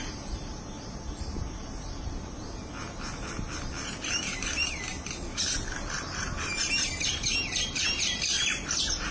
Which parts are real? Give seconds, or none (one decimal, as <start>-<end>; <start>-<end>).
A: none

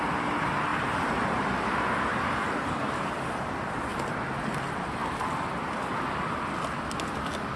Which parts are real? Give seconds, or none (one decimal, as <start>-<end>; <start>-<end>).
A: 0.0-0.7; 3.1-7.6

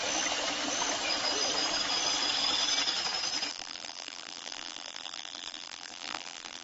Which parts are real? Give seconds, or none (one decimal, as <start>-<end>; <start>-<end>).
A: 0.0-3.5

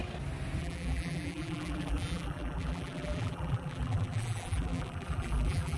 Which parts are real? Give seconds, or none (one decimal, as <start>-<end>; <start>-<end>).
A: 0.0-0.6